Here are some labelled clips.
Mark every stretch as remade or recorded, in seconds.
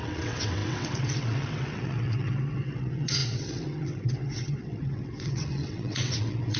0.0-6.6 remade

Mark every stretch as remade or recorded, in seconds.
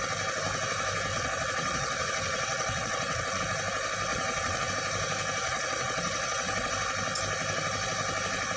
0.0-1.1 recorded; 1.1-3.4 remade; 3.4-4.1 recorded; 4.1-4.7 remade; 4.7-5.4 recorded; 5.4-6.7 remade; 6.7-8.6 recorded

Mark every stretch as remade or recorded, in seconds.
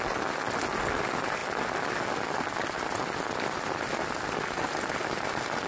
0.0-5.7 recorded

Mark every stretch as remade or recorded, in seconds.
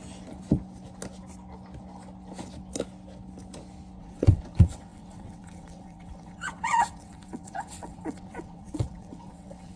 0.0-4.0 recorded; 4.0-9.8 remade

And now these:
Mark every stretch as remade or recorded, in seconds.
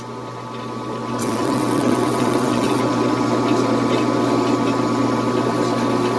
0.0-1.2 recorded; 1.2-2.8 remade; 2.8-6.2 recorded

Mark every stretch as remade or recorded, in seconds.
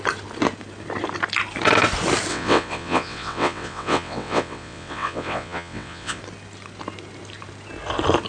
0.0-2.3 recorded; 2.3-6.2 remade; 6.2-8.3 recorded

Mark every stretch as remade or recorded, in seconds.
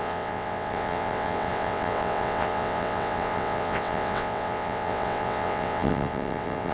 0.0-6.7 remade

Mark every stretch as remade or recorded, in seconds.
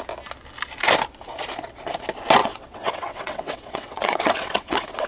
0.0-2.4 recorded; 2.4-5.1 remade